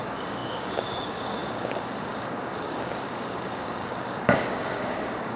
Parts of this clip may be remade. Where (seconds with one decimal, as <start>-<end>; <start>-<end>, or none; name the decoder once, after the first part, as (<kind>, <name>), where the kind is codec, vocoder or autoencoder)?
0.0-5.4 (codec, DAC)